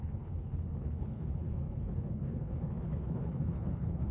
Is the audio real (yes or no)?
no